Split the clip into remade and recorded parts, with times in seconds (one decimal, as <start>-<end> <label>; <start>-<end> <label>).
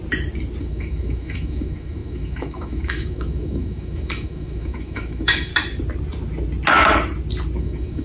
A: 0.0-0.6 recorded; 0.6-5.5 remade; 5.5-7.6 recorded; 7.6-8.0 remade